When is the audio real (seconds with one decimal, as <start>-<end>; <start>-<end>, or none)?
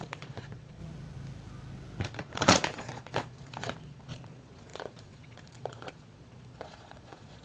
0.8-2.0